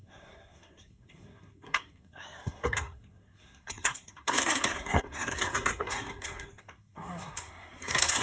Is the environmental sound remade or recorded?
remade